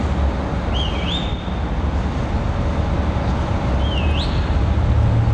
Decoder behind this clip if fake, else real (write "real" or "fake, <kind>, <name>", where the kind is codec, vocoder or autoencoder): real